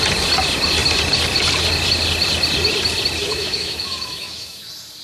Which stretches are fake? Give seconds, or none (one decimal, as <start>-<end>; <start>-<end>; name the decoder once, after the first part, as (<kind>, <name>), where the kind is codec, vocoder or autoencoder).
3.2-4.6 (autoencoder, DAC-VAE)